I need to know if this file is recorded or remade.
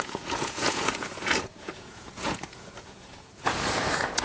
remade